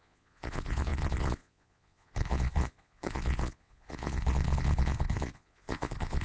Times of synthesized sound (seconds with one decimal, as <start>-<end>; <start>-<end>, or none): 0.0-6.2